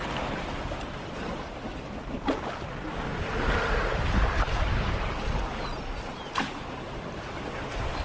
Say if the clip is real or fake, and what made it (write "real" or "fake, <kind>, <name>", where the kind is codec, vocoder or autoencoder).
real